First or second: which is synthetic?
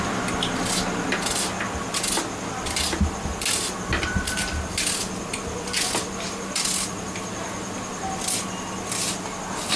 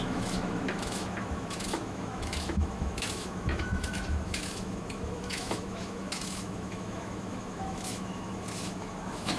second